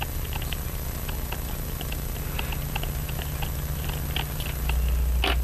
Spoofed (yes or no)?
no